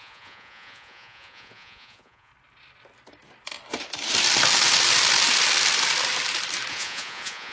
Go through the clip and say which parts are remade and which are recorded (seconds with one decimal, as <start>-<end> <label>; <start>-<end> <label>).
0.0-2.3 remade; 2.3-6.7 recorded; 6.7-7.5 remade